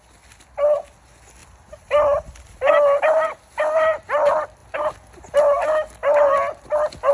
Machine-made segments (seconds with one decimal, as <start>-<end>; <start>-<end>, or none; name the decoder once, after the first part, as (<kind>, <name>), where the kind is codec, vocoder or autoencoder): none